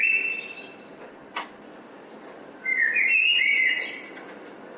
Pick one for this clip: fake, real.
real